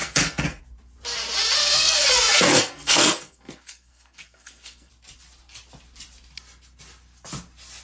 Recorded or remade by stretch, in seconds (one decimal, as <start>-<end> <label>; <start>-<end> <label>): 0.0-0.6 remade; 0.6-1.6 recorded; 1.6-4.9 remade; 4.9-7.8 recorded